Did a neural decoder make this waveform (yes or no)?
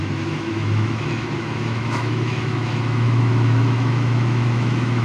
yes